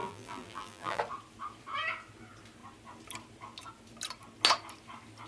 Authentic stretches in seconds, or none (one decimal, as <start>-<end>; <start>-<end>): 1.0-5.3